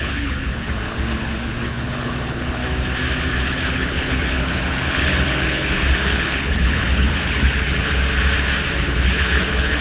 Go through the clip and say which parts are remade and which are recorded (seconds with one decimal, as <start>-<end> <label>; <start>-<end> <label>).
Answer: 0.0-2.6 remade; 2.6-3.4 recorded; 3.4-8.0 remade; 8.0-8.8 recorded; 8.8-9.8 remade